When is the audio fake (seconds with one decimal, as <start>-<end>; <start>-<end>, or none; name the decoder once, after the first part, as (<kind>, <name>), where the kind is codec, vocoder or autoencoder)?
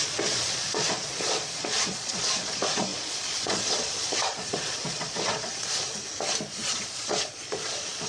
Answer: 0.0-5.9 (vocoder, Vocos); 6.5-8.1